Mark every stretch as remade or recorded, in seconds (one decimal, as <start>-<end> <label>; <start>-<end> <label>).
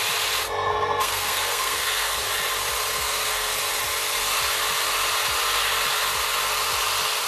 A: 0.0-0.7 recorded; 0.7-2.3 remade; 2.3-2.9 recorded; 2.9-3.6 remade; 3.6-7.3 recorded